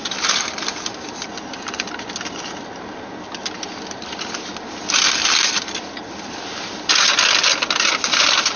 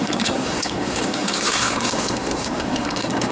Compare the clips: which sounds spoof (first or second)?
second